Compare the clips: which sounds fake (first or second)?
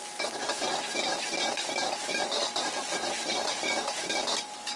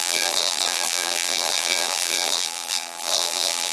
second